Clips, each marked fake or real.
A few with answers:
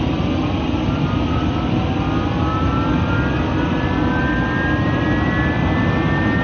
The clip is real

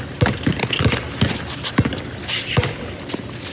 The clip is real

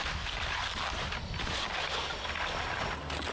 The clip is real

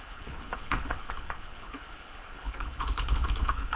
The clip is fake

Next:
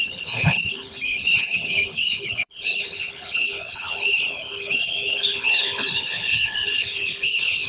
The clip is fake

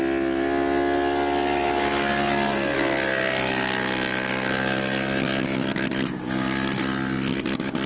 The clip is real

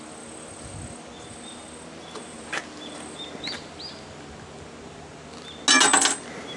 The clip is real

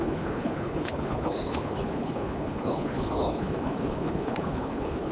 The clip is fake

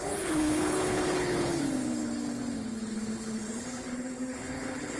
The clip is fake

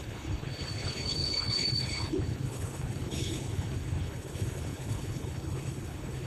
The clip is fake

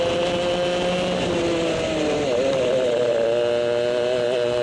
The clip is real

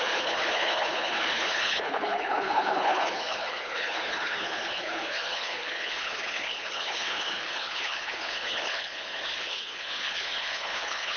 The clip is fake